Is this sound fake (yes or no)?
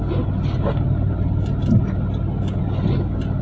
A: no